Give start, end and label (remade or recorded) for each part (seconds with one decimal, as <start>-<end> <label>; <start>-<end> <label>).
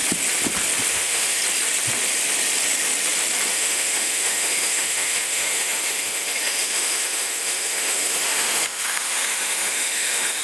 0.0-0.9 recorded; 0.9-1.4 remade; 1.4-3.5 recorded; 3.5-10.4 remade